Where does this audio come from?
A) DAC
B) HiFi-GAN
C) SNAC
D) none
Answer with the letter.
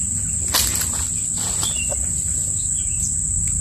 D